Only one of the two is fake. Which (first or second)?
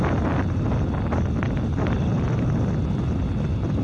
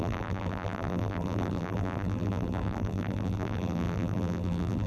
second